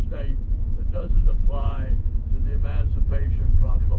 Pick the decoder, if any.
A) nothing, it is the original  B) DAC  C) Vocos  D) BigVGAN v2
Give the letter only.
C